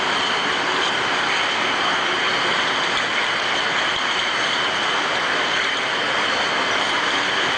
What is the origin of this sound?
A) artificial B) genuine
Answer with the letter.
B